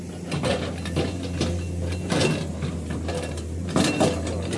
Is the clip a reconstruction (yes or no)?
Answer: no